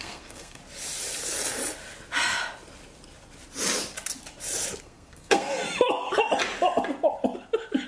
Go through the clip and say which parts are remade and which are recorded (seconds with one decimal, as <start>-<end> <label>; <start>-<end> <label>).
0.0-0.6 remade; 0.6-4.8 recorded; 4.8-5.6 remade; 5.6-7.9 recorded